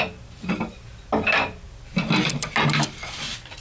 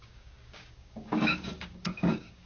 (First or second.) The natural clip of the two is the first